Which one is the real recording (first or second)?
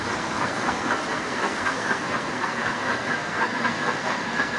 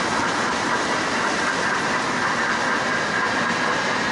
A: second